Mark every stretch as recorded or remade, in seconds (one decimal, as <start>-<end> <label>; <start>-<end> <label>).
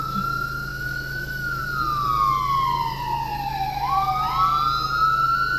0.0-0.7 recorded; 0.7-1.6 remade; 1.6-3.3 recorded; 3.3-3.9 remade; 3.9-5.6 recorded